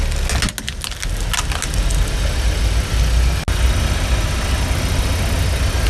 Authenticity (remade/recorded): recorded